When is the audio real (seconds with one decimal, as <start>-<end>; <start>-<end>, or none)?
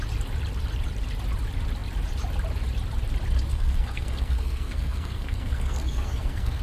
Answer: 0.0-3.5